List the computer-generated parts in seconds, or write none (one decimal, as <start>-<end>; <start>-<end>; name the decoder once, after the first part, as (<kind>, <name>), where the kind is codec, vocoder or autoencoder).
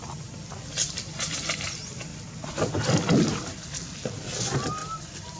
none